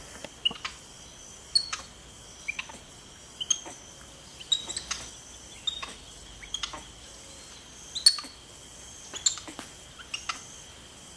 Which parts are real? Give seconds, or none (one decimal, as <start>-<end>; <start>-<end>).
0.0-11.2